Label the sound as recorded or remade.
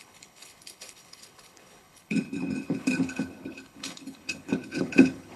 remade